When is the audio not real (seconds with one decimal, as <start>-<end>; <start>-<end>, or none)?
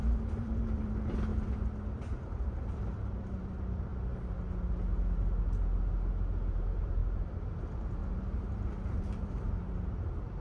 0.0-1.3; 2.3-3.9; 6.5-8.0; 8.9-10.4